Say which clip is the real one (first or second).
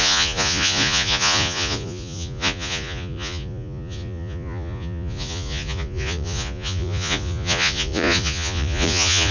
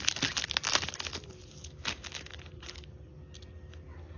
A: second